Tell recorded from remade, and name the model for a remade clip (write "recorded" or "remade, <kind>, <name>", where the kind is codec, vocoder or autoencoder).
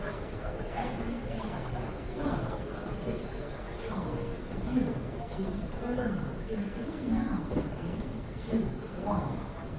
remade, codec, SNAC